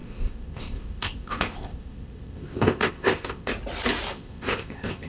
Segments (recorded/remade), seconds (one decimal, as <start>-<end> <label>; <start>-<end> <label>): 0.0-3.5 remade; 3.5-4.1 recorded; 4.1-5.1 remade